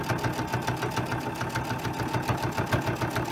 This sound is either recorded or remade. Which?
recorded